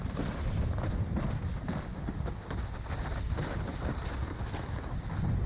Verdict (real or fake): real